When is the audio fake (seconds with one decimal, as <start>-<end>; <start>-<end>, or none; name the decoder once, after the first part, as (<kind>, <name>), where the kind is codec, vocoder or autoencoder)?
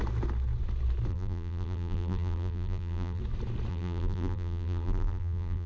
1.1-3.2 (vocoder, BigVGAN v2); 3.7-5.7